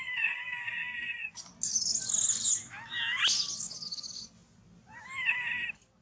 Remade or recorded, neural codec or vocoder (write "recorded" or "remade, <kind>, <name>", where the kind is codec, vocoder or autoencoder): recorded